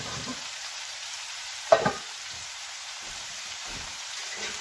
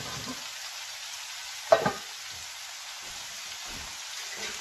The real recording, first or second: second